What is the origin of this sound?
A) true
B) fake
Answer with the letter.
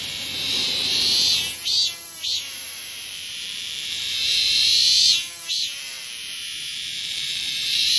B